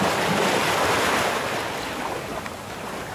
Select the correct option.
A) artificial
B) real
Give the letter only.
B